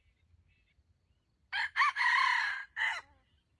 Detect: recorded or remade recorded